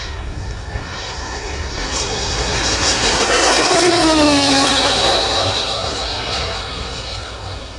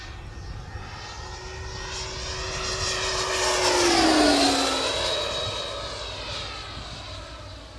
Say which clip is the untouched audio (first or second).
second